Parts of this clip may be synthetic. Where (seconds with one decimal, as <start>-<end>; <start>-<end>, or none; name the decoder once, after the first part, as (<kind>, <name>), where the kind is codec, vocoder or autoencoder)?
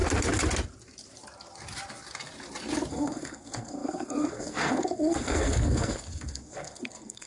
2.9-7.3 (codec, SNAC)